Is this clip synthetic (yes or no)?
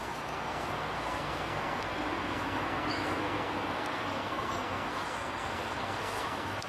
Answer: yes